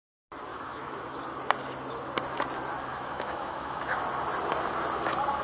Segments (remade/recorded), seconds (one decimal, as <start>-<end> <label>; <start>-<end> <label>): 0.0-0.5 recorded; 0.5-1.2 remade; 1.2-2.9 recorded; 2.9-4.0 remade; 4.0-5.4 recorded